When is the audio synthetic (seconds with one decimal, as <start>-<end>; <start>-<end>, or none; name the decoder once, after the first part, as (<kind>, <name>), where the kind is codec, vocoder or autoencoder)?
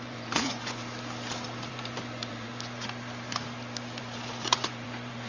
0.0-0.8 (vocoder, Vocos); 1.7-2.5; 4.0-5.3